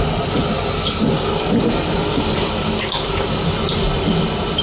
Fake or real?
real